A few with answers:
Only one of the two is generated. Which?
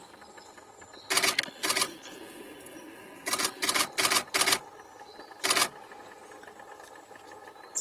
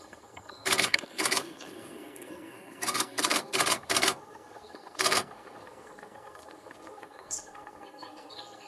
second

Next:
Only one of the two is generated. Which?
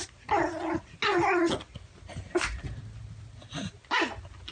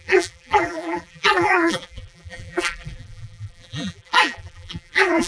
second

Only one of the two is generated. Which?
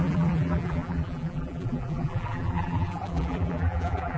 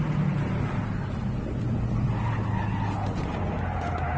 first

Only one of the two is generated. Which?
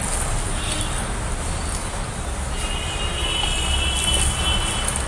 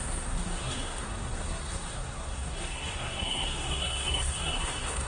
second